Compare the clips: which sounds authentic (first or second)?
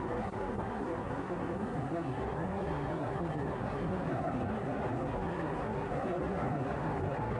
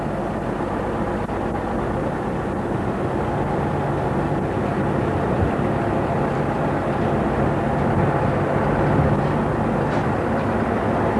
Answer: second